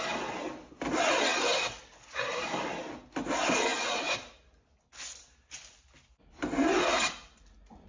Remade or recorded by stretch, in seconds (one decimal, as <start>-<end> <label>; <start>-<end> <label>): 0.0-7.9 recorded